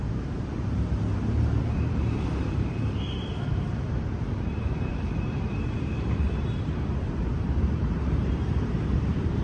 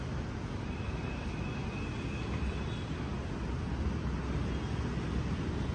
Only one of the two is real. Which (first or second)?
second